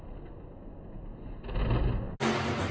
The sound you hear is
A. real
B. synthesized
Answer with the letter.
A